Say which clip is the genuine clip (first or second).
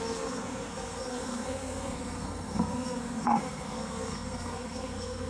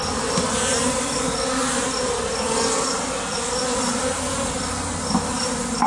second